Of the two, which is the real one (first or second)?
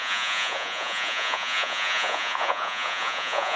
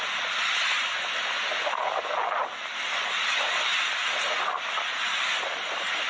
second